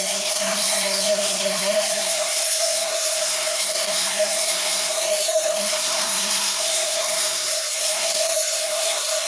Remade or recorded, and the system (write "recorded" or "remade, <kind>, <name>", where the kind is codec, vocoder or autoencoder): remade, codec, SNAC